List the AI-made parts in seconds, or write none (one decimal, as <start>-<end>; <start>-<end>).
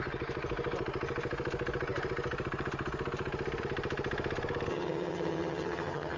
4.7-6.2